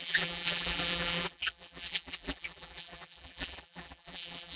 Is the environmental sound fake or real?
fake